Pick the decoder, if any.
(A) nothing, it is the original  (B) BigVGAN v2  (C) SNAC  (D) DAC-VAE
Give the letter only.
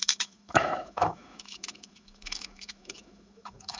D